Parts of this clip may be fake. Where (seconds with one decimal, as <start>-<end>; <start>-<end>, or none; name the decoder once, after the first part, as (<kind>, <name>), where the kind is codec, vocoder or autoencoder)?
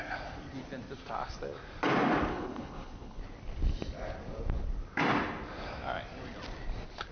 2.3-3.2 (codec, HILCodec)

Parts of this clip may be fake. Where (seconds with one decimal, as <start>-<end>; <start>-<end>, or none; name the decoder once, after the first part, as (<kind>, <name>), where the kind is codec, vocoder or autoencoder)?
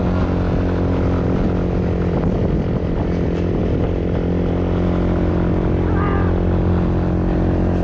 none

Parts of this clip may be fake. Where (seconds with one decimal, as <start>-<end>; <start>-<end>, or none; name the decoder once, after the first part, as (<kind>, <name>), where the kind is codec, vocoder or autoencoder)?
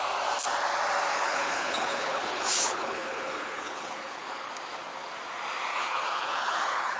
1.1-4.5 (codec, HILCodec); 5.7-7.0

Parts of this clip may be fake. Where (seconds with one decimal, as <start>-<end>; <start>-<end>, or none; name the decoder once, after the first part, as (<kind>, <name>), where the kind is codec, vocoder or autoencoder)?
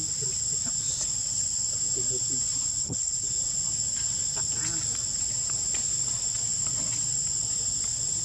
2.8-3.3 (codec, HILCodec)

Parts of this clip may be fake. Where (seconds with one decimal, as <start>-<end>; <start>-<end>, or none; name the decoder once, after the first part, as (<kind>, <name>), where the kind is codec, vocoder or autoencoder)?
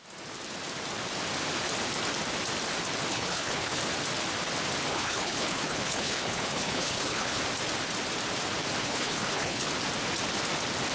3.1-3.8 (codec, HILCodec); 4.9-7.4; 8.8-9.7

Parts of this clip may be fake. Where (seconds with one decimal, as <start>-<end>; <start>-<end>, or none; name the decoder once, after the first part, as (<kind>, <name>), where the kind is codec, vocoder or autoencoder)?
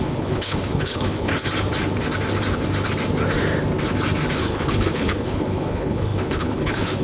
0.0-1.3 (codec, HILCodec); 4.4-7.0